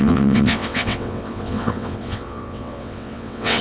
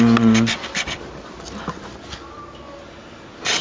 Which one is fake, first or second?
first